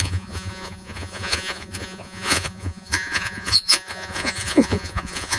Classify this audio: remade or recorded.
remade